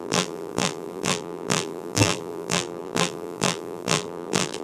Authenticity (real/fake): fake